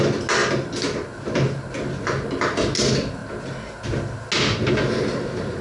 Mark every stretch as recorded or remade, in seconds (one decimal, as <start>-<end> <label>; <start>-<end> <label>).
0.0-5.6 recorded